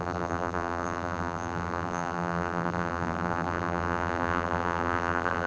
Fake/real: fake